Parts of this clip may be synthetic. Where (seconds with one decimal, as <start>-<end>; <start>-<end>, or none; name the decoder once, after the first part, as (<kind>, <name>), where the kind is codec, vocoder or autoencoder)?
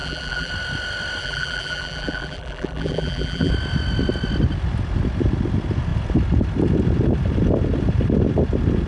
0.0-0.5 (vocoder, BigVGAN v2); 1.2-3.5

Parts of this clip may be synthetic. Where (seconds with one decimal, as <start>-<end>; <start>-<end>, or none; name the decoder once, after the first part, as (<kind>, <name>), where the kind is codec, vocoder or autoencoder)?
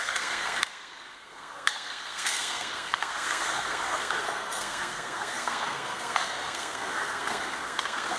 0.0-8.2 (codec, SNAC)